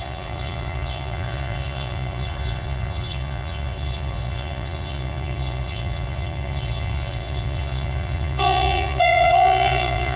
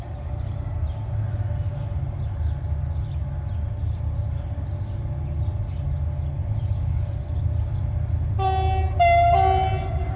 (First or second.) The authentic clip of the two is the second